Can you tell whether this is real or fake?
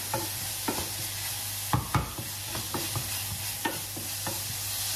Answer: real